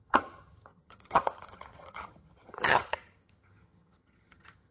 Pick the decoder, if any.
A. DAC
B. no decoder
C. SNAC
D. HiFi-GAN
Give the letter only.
D